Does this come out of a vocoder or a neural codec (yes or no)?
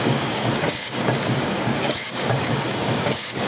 yes